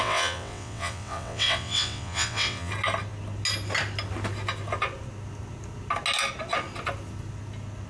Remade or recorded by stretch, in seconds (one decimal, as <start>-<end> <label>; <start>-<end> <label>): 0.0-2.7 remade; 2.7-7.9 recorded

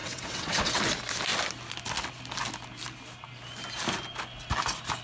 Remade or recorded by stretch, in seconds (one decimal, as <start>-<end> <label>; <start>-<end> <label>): 0.0-0.8 remade; 0.8-5.0 recorded

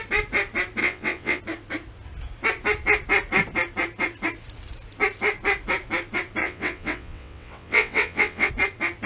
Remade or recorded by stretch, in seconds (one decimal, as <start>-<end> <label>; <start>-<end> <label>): 0.0-0.8 recorded; 0.8-1.4 remade; 1.4-6.4 recorded; 6.4-8.5 remade; 8.5-9.1 recorded